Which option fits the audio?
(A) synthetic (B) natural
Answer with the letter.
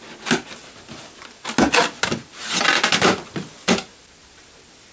B